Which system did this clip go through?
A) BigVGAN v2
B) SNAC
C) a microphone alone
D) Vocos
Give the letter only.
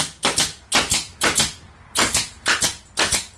C